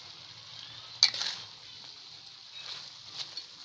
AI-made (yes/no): no